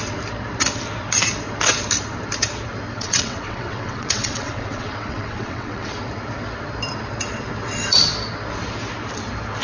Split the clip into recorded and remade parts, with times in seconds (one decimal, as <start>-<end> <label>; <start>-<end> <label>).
0.0-2.9 recorded; 2.9-5.9 remade; 5.9-9.6 recorded

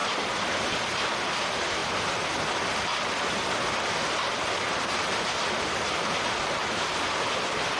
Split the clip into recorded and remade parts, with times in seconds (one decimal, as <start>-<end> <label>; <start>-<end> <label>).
0.0-7.8 recorded

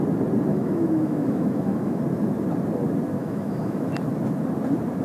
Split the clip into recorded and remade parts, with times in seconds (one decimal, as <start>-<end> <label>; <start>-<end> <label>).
0.0-0.5 recorded; 0.5-2.0 remade; 2.0-3.2 recorded; 3.2-3.9 remade; 3.9-5.0 recorded

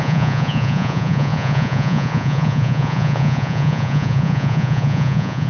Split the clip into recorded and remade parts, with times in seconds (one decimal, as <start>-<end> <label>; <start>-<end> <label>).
0.0-5.5 remade